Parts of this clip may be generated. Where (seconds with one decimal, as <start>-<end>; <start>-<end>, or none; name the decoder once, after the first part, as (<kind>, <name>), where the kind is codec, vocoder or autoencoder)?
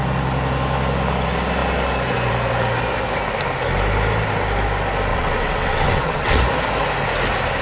5.1-6.4 (vocoder, WaveNeXt)